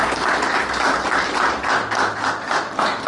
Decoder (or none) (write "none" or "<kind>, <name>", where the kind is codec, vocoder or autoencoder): none